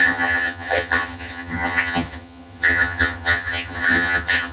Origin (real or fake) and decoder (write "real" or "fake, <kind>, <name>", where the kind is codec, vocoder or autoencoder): fake, vocoder, HiFi-GAN